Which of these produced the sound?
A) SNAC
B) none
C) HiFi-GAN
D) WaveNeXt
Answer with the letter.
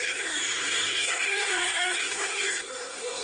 A